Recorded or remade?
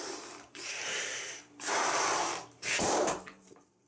remade